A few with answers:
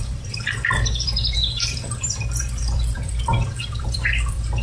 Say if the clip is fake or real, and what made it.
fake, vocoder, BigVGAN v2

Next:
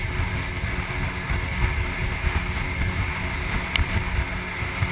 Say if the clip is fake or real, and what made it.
real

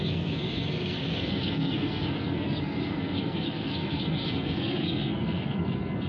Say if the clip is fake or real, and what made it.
fake, codec, SNAC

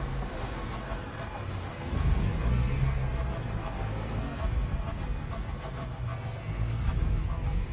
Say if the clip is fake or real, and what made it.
fake, codec, SNAC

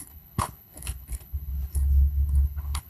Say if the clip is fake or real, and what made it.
fake, codec, HILCodec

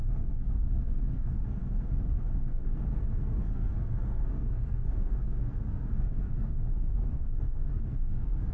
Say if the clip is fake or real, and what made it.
fake, codec, SNAC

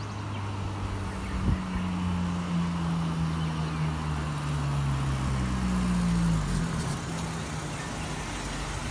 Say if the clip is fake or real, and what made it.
real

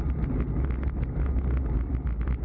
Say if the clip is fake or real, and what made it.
real